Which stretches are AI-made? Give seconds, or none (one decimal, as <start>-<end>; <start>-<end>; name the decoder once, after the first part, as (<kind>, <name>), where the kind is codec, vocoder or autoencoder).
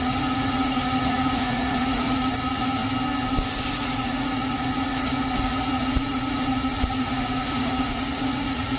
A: 0.0-2.8 (vocoder, Vocos); 3.7-8.8